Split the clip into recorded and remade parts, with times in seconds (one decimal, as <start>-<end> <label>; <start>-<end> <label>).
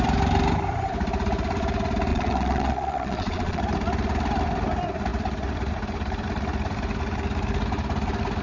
0.0-2.1 recorded; 2.1-3.6 remade; 3.6-8.4 recorded